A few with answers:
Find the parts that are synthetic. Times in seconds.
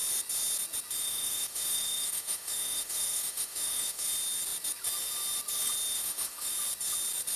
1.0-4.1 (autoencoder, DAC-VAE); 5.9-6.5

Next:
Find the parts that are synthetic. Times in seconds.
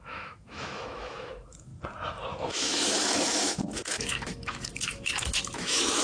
0.0-1.7 (autoencoder, DAC-VAE); 2.5-6.0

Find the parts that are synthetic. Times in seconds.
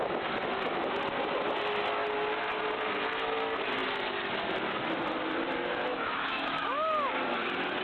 5.9-6.6 (autoencoder, DAC-VAE)